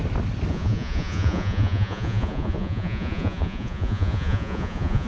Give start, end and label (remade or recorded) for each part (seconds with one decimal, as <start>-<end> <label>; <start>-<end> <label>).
0.0-0.5 recorded; 0.5-5.1 remade